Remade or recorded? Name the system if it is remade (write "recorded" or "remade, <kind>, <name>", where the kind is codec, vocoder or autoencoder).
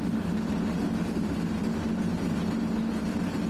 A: recorded